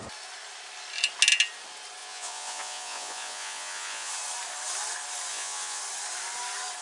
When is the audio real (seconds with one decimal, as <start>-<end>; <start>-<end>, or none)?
0.0-2.0; 4.1-5.3; 5.8-6.8